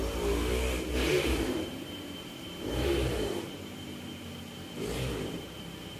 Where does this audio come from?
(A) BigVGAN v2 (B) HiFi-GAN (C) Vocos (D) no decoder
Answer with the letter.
A